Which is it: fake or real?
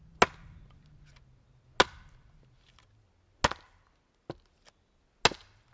real